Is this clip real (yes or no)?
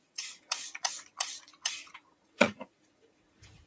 no